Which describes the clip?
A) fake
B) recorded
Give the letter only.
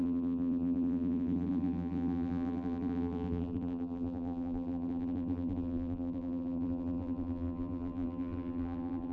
A